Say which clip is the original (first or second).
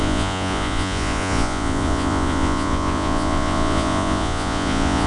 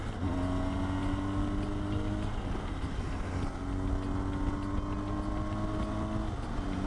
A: second